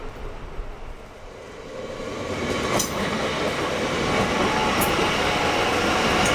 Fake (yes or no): no